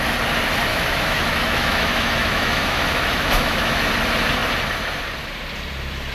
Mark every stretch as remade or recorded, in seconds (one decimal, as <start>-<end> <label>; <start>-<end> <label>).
0.0-0.7 recorded; 0.7-3.9 remade; 3.9-6.1 recorded